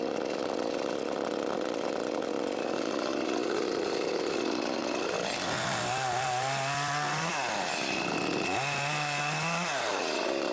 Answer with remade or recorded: recorded